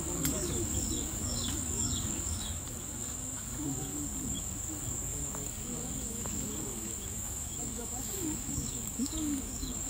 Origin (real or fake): fake